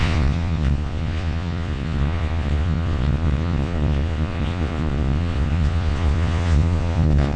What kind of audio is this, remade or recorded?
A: remade